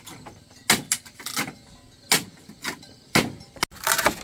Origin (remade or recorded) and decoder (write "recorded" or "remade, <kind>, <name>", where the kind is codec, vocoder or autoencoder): recorded